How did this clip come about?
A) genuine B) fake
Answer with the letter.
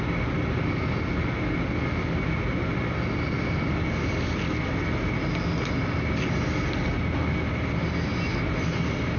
A